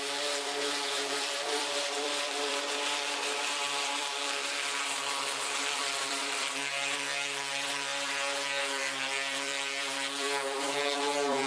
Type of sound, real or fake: fake